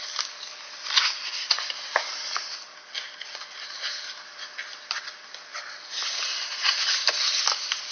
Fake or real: real